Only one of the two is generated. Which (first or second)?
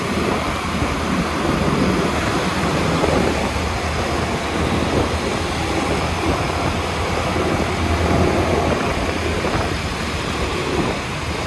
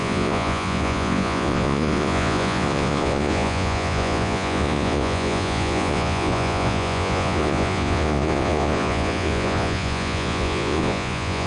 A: second